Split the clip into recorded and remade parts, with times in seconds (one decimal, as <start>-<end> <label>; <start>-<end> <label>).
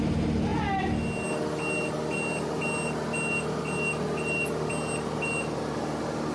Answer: 0.0-6.3 recorded